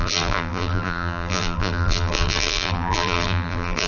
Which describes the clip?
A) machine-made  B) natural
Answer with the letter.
A